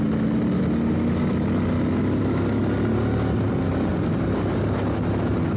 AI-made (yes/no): no